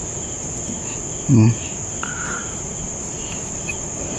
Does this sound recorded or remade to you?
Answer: recorded